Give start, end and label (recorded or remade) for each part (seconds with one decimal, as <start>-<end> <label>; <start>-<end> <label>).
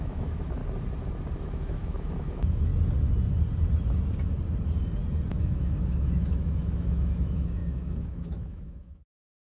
0.0-0.6 remade; 0.6-1.4 recorded; 1.4-2.7 remade; 2.7-5.3 recorded; 5.3-9.5 remade